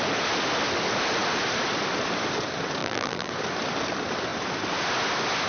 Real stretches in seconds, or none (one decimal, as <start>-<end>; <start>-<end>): 0.0-2.8; 3.3-5.5

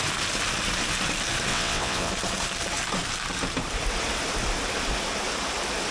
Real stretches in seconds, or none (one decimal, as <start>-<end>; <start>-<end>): 0.0-1.5; 2.1-5.9

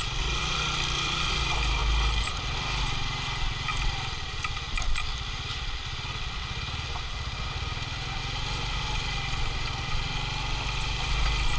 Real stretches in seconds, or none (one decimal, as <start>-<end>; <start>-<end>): 1.8-2.8